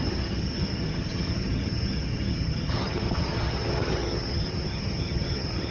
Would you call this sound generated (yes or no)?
yes